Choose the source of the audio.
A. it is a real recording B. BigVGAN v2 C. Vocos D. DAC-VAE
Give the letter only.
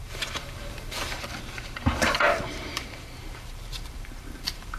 B